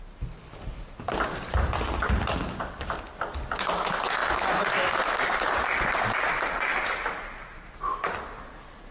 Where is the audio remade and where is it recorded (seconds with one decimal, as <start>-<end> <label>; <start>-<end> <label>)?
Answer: 0.0-8.9 recorded

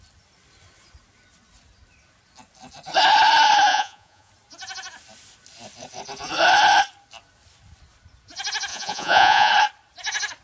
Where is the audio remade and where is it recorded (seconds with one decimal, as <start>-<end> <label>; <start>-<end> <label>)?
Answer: 0.0-3.7 recorded; 3.7-4.3 remade; 4.3-8.7 recorded; 8.7-9.5 remade; 9.5-10.4 recorded

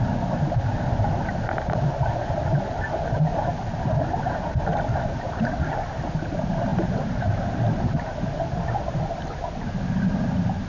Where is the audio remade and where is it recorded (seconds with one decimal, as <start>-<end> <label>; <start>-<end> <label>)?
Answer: 0.0-10.7 recorded